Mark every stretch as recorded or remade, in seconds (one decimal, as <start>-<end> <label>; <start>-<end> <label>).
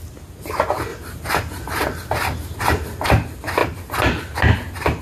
0.0-5.0 recorded